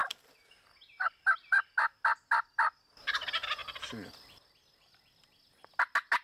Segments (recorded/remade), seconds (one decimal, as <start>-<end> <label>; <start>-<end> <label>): 0.0-0.5 remade; 0.5-3.6 recorded; 3.6-5.0 remade; 5.0-6.2 recorded